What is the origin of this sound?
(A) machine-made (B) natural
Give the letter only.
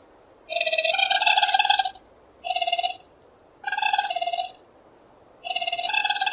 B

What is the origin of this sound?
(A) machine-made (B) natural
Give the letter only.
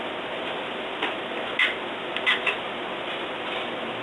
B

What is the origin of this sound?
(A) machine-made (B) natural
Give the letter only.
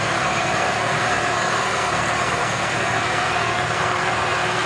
A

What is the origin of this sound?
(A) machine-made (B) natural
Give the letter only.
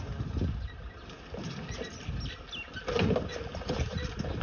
B